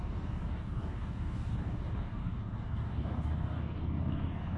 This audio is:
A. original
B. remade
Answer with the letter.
B